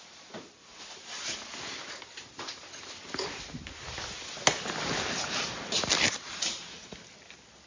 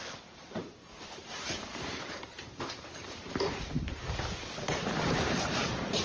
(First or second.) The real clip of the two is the first